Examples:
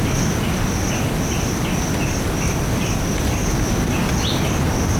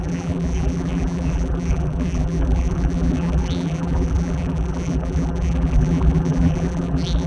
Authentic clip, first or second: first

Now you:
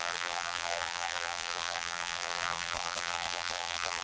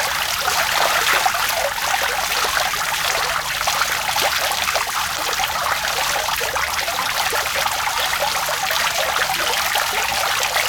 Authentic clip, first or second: second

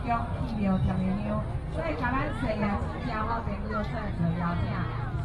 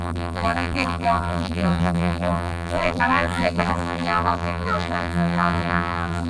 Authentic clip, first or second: first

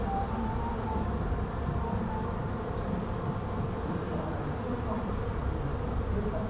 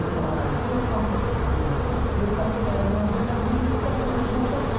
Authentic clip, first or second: second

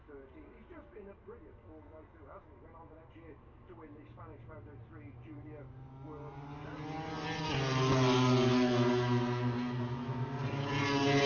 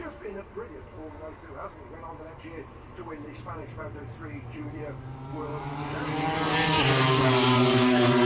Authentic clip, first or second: first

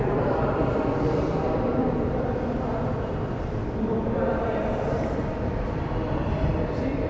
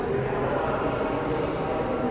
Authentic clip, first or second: second